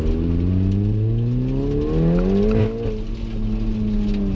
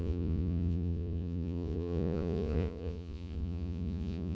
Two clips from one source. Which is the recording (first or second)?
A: first